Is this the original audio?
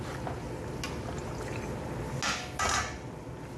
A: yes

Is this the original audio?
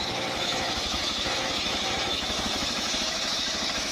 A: no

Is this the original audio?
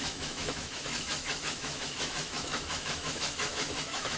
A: no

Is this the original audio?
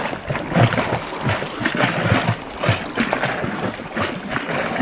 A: yes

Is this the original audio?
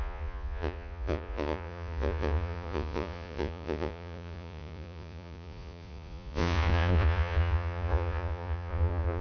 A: no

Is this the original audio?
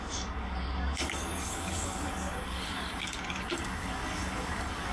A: no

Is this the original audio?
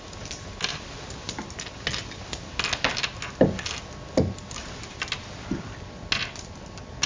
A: yes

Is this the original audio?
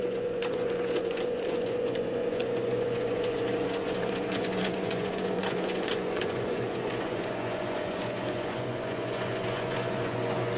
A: no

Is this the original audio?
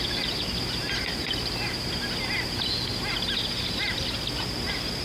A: yes